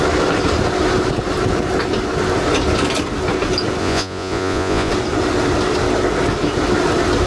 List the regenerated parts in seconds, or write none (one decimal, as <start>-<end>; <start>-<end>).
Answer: 3.8-4.9